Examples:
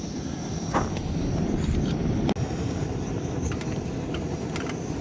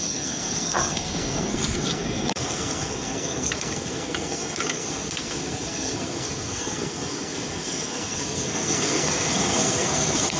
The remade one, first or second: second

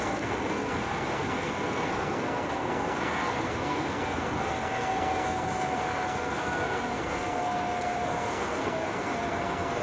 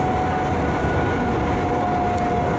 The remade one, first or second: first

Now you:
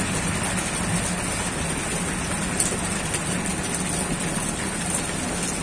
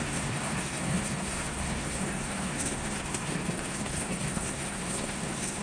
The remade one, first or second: second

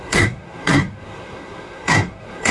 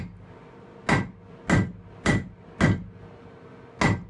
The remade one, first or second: first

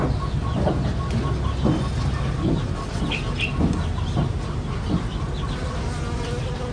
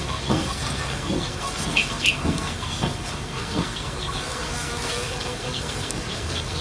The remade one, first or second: second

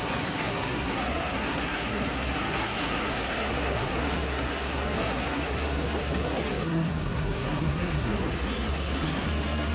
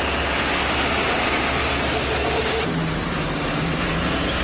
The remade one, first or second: first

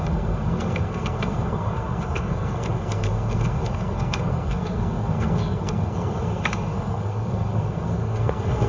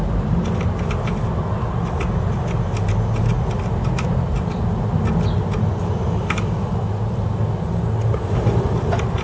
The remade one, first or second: first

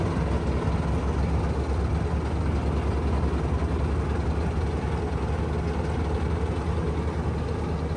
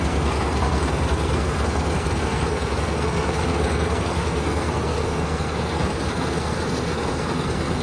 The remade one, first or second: second